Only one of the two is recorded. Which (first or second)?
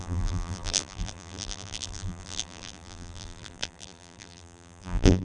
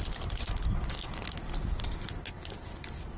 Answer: second